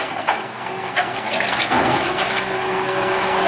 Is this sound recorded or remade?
remade